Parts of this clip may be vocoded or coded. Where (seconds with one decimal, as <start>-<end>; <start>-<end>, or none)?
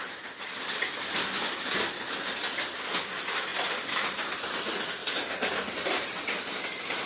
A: 3.5-4.3; 5.0-7.1